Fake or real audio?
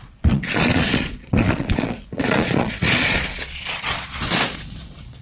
fake